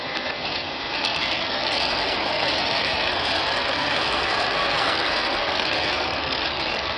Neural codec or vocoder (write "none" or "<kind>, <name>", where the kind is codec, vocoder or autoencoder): codec, SNAC